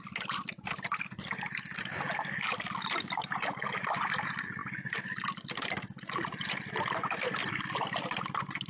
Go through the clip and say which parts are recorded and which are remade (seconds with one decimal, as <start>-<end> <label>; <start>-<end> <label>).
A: 0.0-8.7 recorded